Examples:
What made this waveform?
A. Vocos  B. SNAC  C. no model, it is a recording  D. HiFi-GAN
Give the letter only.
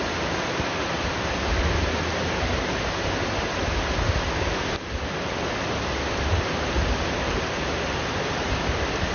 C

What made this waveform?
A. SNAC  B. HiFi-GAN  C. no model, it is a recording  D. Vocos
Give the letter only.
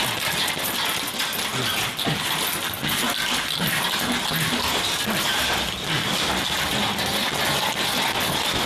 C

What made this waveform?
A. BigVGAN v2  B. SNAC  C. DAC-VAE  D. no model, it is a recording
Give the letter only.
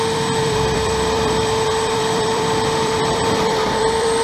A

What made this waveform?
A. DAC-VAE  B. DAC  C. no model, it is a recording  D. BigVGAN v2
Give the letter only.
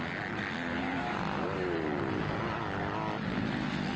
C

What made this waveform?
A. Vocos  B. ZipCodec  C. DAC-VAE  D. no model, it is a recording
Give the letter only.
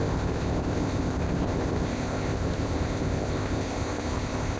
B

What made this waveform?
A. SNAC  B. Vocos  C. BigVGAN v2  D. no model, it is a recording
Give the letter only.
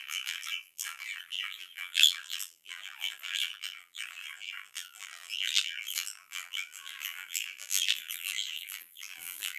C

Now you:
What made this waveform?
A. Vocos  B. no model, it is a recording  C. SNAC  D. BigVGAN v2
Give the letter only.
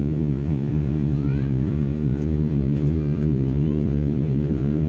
A